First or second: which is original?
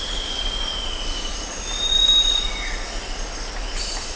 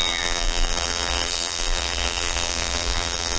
first